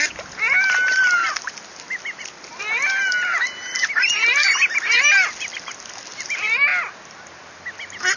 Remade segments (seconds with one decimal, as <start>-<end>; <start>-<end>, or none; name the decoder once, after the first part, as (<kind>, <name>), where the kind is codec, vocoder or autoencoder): none